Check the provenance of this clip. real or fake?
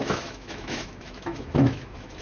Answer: fake